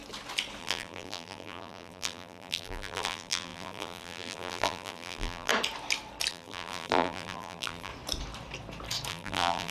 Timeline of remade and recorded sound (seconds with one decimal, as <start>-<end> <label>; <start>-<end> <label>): 0.0-0.6 recorded; 0.6-5.5 remade; 5.5-6.3 recorded; 6.3-7.9 remade; 7.9-9.1 recorded; 9.1-9.7 remade